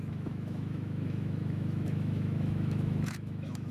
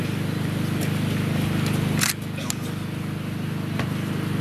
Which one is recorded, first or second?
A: second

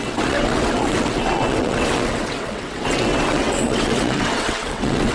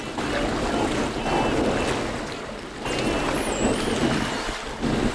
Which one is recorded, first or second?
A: second